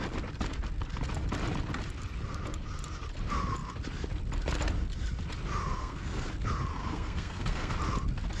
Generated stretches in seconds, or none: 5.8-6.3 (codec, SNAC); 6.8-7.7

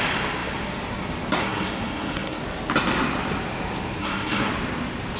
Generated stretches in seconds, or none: 1.4-2.4 (codec, SNAC); 4.0-4.5

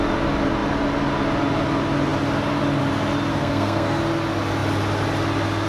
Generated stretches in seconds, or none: 3.3-4.0 (codec, SNAC)

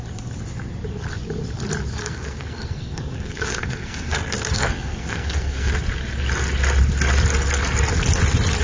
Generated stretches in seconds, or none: 2.0-5.7 (codec, SNAC)

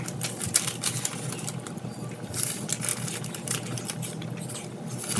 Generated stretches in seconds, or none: none

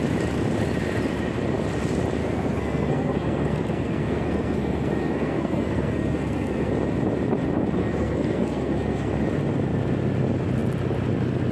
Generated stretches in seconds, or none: 2.2-6.7 (codec, SNAC); 7.8-9.1

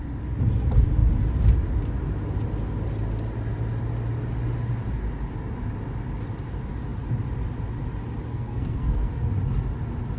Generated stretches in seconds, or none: 8.3-9.3 (codec, SNAC)

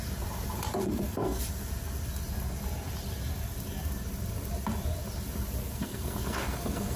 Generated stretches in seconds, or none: 0.8-1.4 (codec, SNAC); 5.6-7.0